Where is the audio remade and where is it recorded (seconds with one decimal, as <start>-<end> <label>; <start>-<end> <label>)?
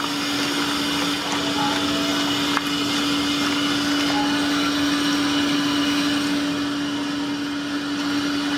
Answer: 0.0-8.6 recorded